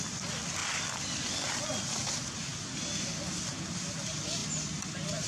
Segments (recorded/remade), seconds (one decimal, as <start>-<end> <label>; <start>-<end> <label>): 0.0-0.6 recorded; 0.6-1.5 remade; 1.5-5.3 recorded